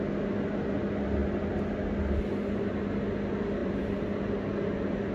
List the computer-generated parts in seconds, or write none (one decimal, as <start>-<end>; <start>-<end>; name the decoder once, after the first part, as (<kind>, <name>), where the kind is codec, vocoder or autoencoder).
3.6-4.2 (vocoder, BigVGAN v2)